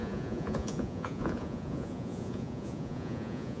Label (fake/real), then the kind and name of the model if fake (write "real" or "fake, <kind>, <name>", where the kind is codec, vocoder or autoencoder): fake, vocoder, Vocos